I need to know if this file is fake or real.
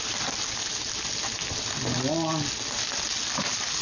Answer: real